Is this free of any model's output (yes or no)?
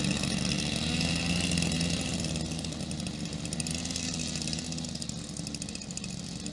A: yes